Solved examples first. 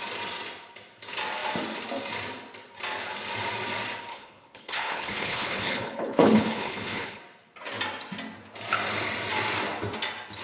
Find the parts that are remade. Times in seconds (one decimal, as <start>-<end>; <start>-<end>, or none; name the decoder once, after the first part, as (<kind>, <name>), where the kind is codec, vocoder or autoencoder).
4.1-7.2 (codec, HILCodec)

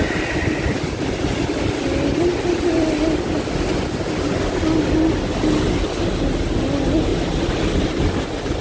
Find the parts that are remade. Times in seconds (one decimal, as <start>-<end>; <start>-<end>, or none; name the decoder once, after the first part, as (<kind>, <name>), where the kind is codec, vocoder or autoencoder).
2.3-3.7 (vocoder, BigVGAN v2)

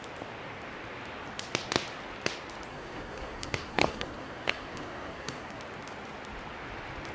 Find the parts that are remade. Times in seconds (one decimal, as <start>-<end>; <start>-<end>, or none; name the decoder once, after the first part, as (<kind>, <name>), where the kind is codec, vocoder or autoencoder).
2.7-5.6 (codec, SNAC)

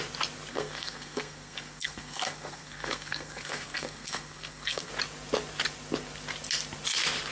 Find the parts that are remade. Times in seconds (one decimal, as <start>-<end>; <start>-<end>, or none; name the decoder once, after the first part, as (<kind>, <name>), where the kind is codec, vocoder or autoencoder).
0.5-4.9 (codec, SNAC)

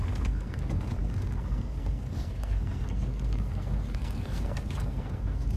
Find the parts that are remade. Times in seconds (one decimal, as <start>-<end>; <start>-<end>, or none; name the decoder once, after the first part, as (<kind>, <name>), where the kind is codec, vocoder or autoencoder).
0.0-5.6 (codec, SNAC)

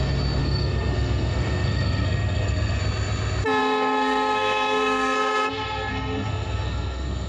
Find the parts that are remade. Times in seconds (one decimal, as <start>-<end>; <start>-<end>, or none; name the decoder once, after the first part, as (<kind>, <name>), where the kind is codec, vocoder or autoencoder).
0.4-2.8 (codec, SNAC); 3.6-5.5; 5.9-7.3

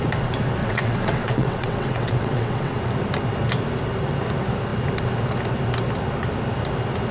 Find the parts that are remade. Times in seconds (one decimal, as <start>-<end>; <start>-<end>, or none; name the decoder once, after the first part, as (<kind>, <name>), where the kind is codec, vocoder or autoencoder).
0.6-2.8 (vocoder, WaveNeXt)

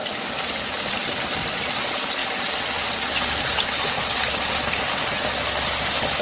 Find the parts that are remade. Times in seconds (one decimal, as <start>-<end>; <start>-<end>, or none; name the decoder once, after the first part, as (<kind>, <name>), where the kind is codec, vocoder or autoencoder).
0.0-0.8 (vocoder, BigVGAN v2); 2.2-2.9